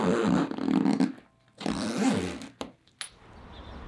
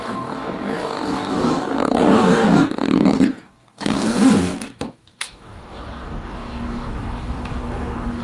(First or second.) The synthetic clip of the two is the second